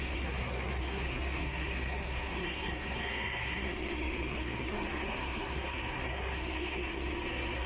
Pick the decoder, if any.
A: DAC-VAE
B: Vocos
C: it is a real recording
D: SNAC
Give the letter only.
D